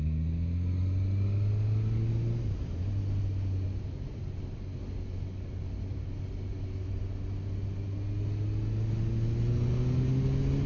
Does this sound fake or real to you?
real